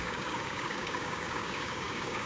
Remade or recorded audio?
remade